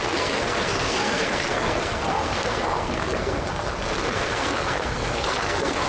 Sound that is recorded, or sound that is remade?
remade